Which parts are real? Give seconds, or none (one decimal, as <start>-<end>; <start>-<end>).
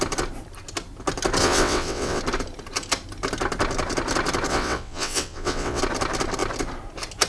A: 0.0-1.4; 2.2-4.5; 5.8-7.3